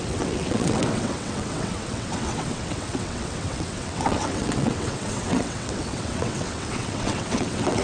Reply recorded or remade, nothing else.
remade